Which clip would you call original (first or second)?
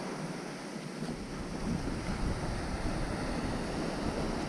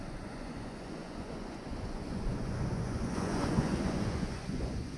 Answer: first